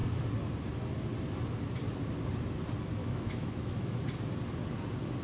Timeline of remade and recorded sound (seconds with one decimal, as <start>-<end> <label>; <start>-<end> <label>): 0.0-3.0 recorded; 3.0-4.0 remade; 4.0-5.2 recorded